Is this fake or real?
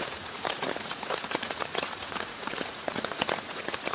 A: fake